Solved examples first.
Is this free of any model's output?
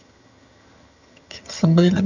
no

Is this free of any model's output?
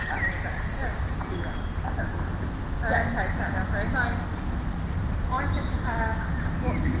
yes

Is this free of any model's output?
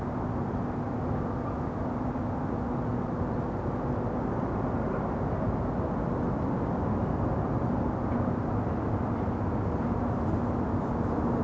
yes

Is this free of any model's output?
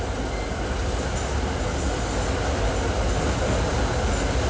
yes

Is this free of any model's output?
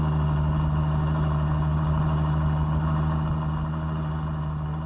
yes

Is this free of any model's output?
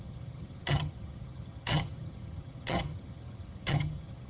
no